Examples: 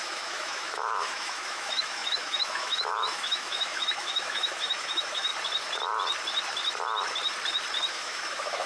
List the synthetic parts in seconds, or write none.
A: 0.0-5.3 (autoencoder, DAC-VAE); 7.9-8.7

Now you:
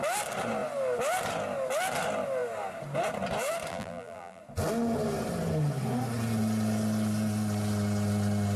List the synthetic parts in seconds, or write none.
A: 3.7-4.4 (vocoder, BigVGAN v2)